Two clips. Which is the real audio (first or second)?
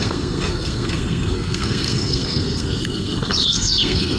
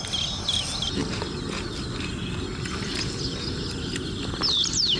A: second